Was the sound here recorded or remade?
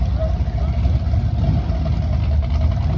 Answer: recorded